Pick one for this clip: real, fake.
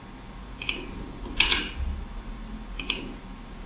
real